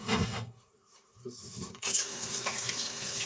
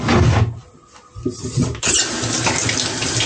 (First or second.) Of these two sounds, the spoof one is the first